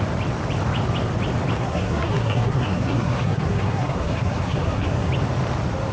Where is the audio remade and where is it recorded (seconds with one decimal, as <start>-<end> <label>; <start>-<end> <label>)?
0.0-1.6 recorded; 1.6-5.1 remade; 5.1-5.9 recorded